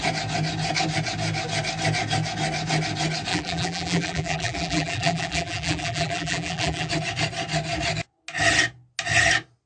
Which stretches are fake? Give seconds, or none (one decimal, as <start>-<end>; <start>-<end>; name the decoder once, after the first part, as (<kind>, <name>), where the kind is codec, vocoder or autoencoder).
3.3-6.9 (vocoder, BigVGAN v2)